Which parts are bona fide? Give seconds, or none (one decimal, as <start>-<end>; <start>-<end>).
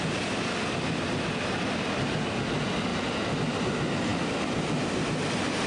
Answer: 0.0-5.7